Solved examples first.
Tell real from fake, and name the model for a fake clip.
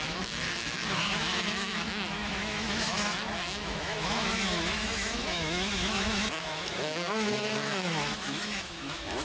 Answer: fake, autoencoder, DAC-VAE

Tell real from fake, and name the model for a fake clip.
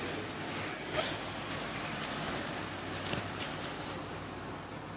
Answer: real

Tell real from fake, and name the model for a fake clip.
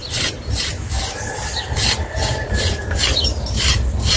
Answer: real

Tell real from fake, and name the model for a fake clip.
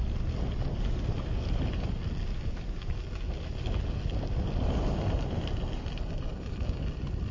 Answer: real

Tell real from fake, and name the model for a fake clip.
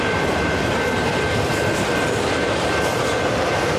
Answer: fake, vocoder, BigVGAN v2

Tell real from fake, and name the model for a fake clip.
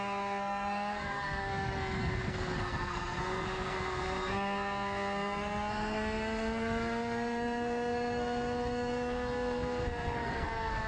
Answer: fake, codec, SNAC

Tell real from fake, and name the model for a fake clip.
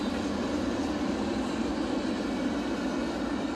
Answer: real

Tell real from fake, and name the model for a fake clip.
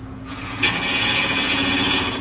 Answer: fake, vocoder, Vocos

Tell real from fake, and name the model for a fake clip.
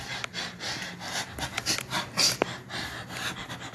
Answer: real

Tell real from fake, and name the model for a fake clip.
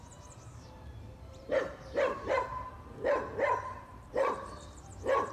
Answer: fake, vocoder, BigVGAN v2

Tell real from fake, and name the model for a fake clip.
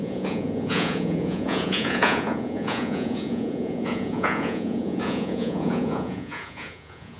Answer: fake, vocoder, Vocos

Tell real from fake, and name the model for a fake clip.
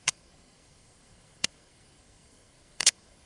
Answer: fake, codec, SNAC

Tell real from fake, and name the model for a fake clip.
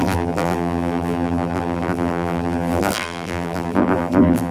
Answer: fake, vocoder, BigVGAN v2